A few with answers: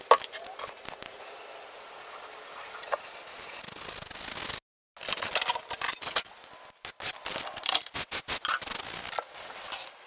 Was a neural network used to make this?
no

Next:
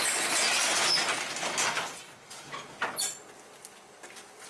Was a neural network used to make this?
no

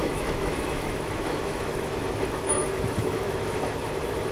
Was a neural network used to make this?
yes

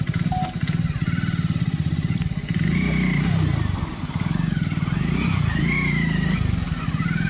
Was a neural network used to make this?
no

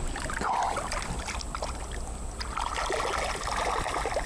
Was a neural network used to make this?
no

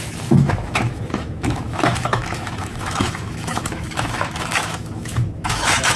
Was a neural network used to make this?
yes